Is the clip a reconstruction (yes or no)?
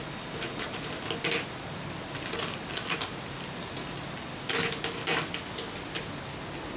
no